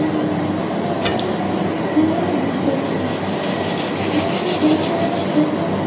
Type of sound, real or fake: real